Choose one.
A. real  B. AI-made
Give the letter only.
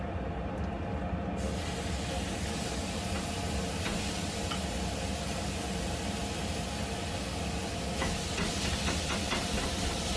A